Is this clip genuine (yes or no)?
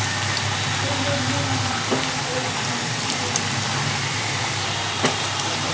yes